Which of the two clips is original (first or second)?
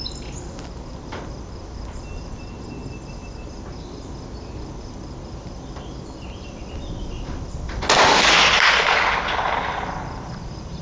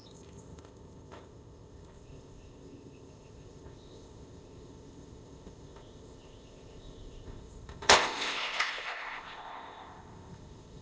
first